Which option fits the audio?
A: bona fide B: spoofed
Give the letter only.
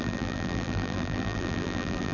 B